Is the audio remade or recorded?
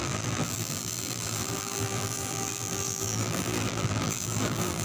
remade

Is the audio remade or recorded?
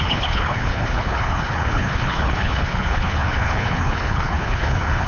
remade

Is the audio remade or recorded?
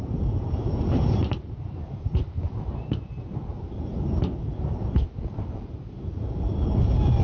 remade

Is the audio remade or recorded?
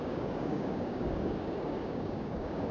remade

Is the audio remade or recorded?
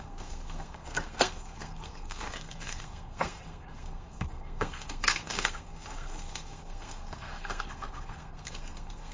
remade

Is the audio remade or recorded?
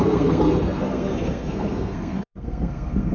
remade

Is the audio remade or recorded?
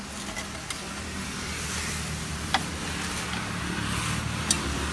recorded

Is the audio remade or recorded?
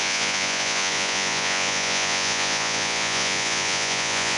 remade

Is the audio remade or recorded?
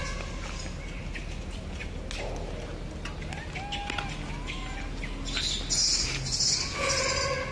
recorded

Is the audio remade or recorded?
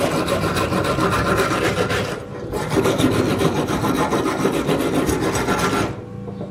recorded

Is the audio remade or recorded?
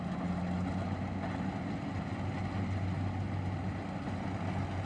recorded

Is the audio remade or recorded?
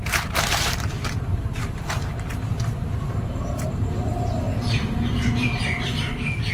remade